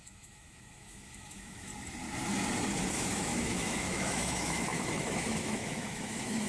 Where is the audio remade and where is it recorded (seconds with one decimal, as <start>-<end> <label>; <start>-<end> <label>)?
0.0-1.7 remade; 1.7-2.9 recorded; 2.9-6.5 remade